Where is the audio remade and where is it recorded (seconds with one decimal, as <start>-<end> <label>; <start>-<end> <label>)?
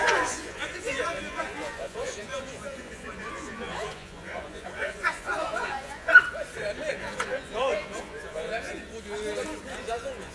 0.0-6.1 remade; 6.1-6.9 recorded; 6.9-8.8 remade; 8.8-9.8 recorded; 9.8-10.3 remade